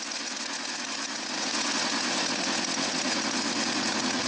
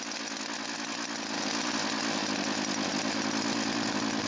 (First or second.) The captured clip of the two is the second